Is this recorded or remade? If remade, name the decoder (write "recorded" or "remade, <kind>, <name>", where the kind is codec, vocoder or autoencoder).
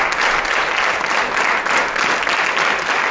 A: recorded